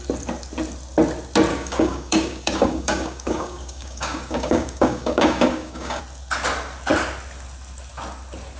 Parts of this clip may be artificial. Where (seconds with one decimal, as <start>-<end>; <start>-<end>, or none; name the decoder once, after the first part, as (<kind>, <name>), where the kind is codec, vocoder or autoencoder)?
1.5-6.0 (codec, DAC)